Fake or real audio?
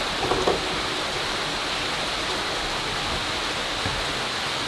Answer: real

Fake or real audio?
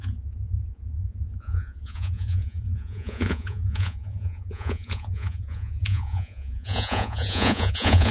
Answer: fake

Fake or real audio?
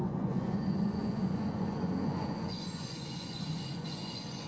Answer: fake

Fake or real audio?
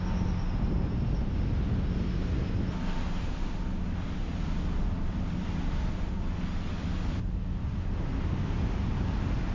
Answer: real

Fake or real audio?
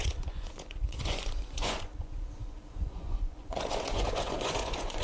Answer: fake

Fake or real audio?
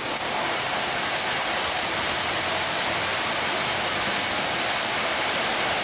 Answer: real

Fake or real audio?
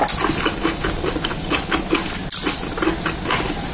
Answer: real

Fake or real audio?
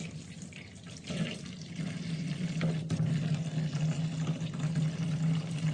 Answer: real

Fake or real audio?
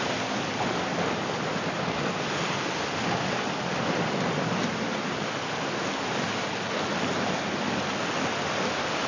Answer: real